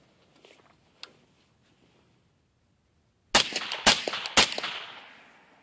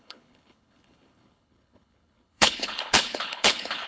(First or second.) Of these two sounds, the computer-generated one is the second